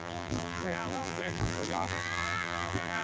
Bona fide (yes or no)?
no